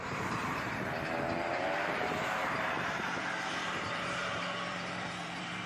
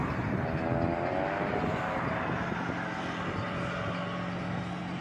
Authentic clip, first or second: second